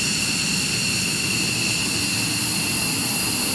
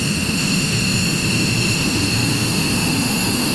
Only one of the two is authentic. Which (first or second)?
first